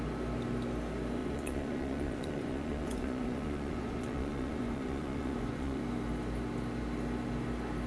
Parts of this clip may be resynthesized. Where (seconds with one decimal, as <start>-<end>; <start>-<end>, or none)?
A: 1.2-5.8